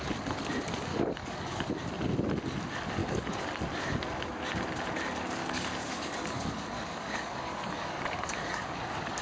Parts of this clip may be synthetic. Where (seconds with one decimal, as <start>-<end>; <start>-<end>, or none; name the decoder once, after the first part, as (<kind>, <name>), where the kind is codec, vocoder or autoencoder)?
0.9-1.7 (codec, DAC); 3.0-3.6; 5.4-9.2

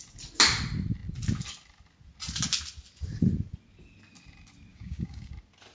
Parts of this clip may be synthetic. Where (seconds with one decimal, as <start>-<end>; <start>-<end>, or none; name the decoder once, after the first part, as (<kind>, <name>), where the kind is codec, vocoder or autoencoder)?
4.7-5.3 (codec, DAC)

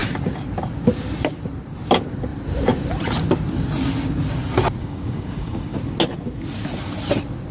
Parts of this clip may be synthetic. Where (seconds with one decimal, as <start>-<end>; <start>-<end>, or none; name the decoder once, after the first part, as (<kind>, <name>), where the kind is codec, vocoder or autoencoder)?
4.8-5.8 (codec, DAC)